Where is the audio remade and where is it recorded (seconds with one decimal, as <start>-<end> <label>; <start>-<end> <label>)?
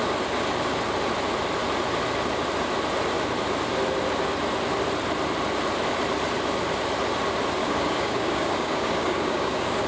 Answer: 0.0-7.6 recorded; 7.6-9.9 remade